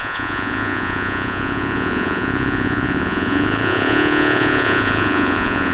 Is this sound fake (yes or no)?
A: yes